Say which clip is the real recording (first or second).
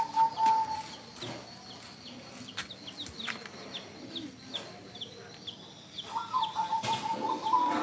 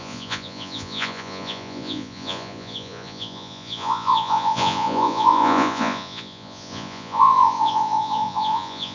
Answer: first